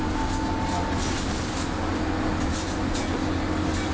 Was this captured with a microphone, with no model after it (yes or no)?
yes